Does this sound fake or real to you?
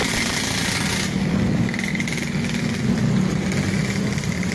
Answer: real